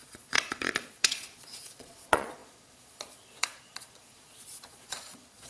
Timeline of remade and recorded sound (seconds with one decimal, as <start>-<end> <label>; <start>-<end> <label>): 0.0-5.5 remade